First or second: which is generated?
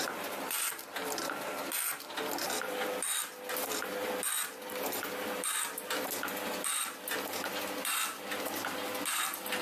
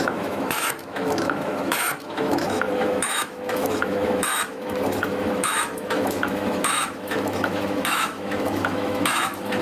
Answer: second